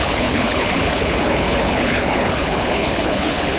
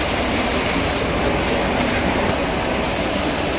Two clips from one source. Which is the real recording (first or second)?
second